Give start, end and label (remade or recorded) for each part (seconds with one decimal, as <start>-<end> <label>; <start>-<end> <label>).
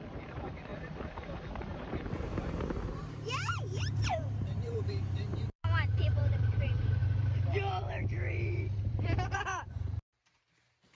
0.0-10.9 remade